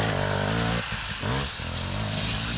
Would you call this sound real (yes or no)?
yes